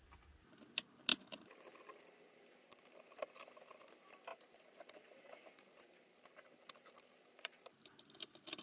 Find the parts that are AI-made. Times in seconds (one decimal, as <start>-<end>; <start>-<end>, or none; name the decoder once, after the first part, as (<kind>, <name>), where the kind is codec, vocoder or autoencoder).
1.1-3.2 (vocoder, BigVGAN v2); 4.3-7.9